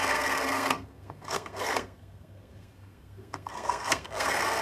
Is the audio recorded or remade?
remade